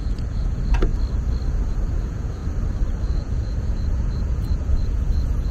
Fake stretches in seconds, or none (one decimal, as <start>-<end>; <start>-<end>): 0.0-0.9; 1.5-2.4; 3.0-5.5